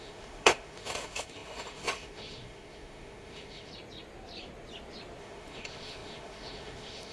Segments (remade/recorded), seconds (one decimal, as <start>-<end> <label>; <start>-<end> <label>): 0.0-3.7 remade; 3.7-5.2 recorded; 5.2-7.1 remade

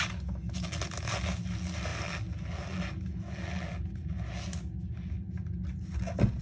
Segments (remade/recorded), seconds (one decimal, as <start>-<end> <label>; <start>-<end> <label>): 0.0-6.4 recorded

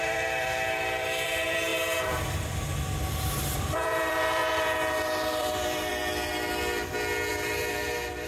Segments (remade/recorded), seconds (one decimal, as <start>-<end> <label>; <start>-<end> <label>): 0.0-1.7 remade; 1.7-3.6 recorded; 3.6-4.4 remade; 4.4-5.4 recorded; 5.4-6.0 remade; 6.0-7.3 recorded; 7.3-8.3 remade

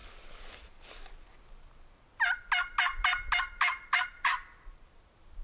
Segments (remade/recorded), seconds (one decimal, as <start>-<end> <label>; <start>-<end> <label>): 0.0-5.4 recorded

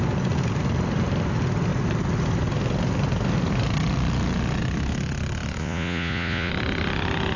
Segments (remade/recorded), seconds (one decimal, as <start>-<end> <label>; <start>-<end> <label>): 0.0-5.6 recorded; 5.6-6.5 remade; 6.5-7.4 recorded

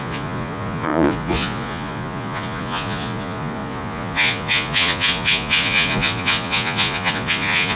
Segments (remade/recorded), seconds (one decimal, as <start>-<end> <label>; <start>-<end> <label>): 0.0-7.8 remade

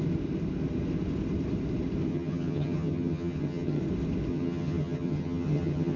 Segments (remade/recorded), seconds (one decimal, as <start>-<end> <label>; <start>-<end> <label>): 0.0-2.1 recorded; 2.1-3.8 remade; 3.8-4.3 recorded; 4.3-6.0 remade